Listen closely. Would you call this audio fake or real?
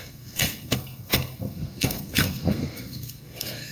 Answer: fake